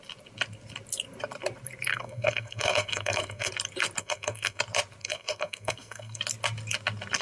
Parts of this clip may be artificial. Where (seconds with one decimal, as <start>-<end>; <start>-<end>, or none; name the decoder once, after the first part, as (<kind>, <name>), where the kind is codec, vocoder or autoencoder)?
1.9-3.5 (codec, SNAC); 4.0-4.6; 5.0-6.2